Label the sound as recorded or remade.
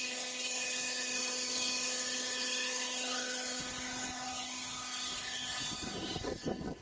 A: remade